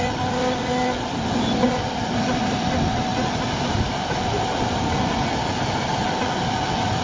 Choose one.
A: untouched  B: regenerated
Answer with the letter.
A